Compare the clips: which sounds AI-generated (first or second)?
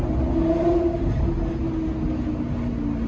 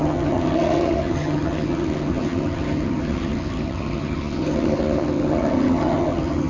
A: second